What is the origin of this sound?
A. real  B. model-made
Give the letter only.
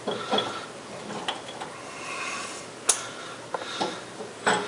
A